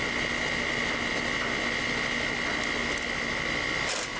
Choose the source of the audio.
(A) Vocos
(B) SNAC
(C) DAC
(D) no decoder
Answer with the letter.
D